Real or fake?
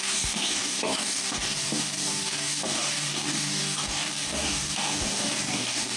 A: fake